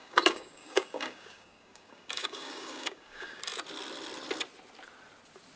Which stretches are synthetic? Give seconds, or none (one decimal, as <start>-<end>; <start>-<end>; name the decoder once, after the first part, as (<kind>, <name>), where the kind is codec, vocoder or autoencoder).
0.0-3.4 (codec, DAC)